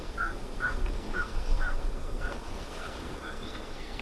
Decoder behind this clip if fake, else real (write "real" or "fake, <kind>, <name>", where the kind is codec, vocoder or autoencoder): fake, codec, SNAC